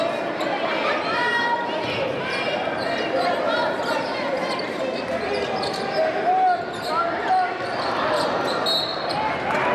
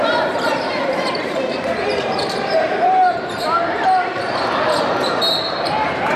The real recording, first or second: first